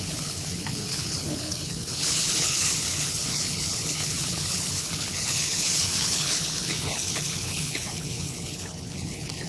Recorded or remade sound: remade